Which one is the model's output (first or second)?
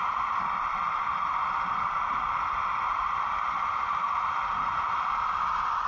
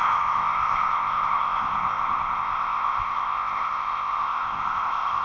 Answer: second